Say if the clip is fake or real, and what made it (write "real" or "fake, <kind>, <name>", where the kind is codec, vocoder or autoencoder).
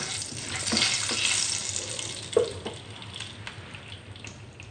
real